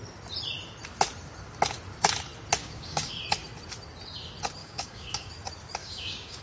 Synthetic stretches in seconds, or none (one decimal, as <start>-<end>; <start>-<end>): 2.6-3.1; 4.6-5.3; 5.8-6.4